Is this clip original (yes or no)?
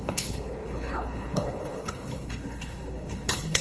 no